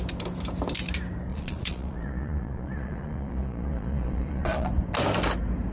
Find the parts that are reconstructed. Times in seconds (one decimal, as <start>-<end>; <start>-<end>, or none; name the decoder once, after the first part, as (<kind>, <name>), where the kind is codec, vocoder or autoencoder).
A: 1.3-4.7 (vocoder, Vocos)